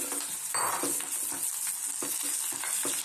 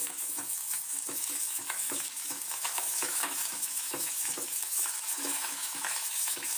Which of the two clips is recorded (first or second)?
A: first